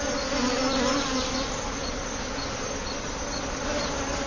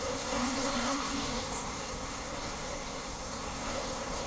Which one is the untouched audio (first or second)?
first